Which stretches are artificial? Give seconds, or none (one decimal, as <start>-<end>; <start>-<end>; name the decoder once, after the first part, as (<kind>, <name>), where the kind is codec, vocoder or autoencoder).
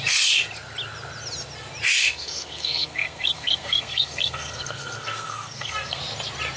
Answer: 2.0-6.0 (codec, SNAC)